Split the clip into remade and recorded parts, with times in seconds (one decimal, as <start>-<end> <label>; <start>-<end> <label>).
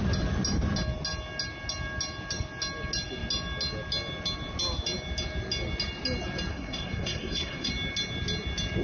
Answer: 0.0-6.5 recorded; 6.5-7.7 remade; 7.7-8.8 recorded